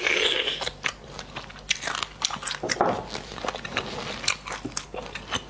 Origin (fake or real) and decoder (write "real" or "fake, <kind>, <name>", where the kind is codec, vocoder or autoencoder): real